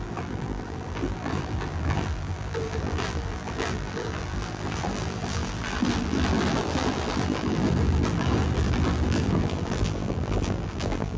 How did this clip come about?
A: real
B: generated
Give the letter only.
B